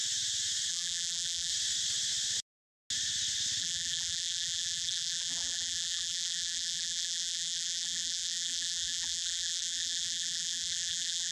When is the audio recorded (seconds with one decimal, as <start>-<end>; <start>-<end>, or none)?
0.0-0.7; 1.5-3.6